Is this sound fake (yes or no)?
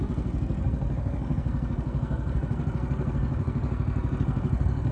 yes